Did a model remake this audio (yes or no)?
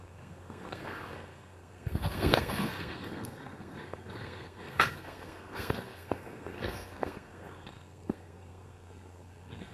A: yes